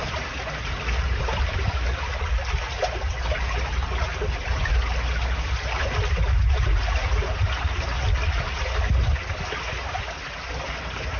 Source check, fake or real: real